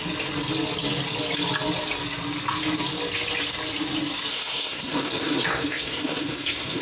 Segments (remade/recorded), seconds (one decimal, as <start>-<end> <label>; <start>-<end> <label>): 0.0-4.3 recorded; 4.3-6.8 remade